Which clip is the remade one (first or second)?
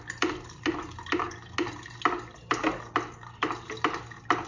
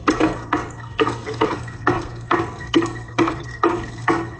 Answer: second